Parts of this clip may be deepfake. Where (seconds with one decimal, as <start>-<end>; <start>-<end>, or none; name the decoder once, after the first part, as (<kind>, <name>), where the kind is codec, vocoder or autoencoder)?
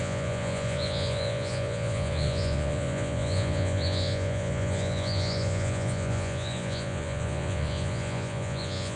0.0-9.0 (vocoder, Vocos)